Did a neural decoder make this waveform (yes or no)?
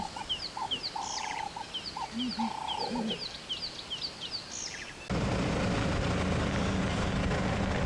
no